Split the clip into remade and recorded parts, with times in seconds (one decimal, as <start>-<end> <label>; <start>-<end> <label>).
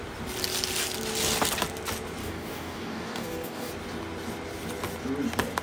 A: 0.0-2.2 recorded; 2.2-3.7 remade; 3.7-5.6 recorded